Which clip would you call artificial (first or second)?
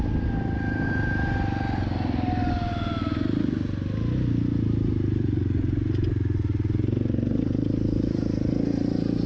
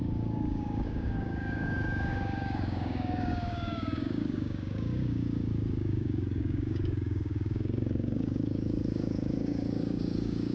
second